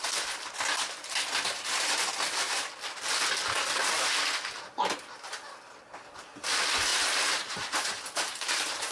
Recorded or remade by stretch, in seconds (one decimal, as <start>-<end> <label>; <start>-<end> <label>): 0.0-6.9 recorded; 6.9-8.9 remade